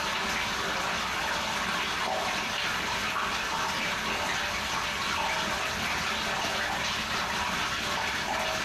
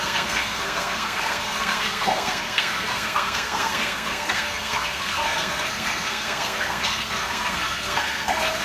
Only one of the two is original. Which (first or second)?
first